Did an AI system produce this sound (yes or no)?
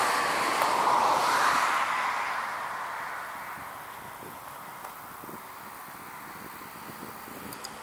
no